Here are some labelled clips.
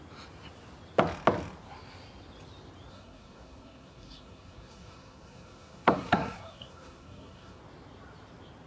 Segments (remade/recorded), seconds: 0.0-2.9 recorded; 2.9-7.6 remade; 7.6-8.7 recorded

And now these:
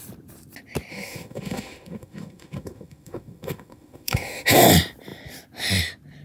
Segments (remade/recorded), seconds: 0.0-0.9 recorded; 0.9-4.6 remade; 4.6-6.2 recorded

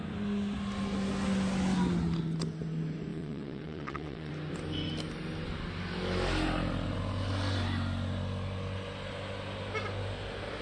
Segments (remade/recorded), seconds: 0.0-3.1 recorded; 3.1-4.3 remade; 4.3-10.6 recorded

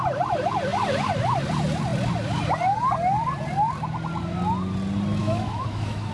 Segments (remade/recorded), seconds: 0.0-5.2 recorded; 5.2-6.1 remade

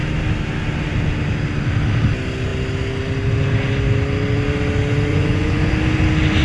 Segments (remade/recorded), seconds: 0.0-5.1 recorded; 5.1-5.7 remade; 5.7-6.4 recorded

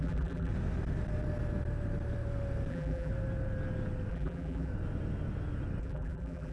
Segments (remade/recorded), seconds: 0.0-0.5 remade; 0.5-2.7 recorded; 2.7-3.1 remade; 3.1-4.1 recorded; 4.1-4.7 remade; 4.7-5.8 recorded; 5.8-6.5 remade

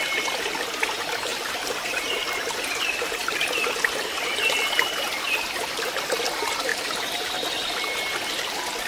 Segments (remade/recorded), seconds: 0.0-1.3 recorded; 1.3-2.2 remade; 2.2-8.9 recorded

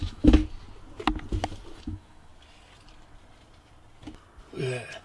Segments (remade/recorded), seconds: 0.0-0.4 remade; 0.4-1.8 recorded; 1.8-2.3 remade; 2.3-5.0 recorded